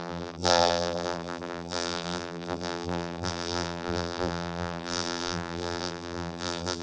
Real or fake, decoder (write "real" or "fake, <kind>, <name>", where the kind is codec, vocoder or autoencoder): fake, vocoder, BigVGAN v2